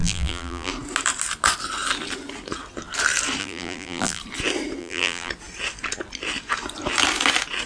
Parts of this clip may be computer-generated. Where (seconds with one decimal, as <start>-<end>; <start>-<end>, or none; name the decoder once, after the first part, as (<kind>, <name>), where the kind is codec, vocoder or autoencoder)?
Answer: 0.0-0.7 (vocoder, BigVGAN v2); 3.4-4.2; 4.8-5.3

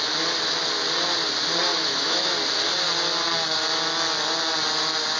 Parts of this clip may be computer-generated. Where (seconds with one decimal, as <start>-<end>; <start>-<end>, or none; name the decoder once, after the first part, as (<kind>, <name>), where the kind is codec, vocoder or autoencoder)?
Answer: 1.7-2.3 (autoencoder, DAC-VAE)